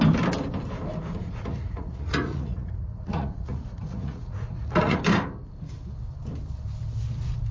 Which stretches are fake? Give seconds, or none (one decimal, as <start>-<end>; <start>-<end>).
1.2-5.0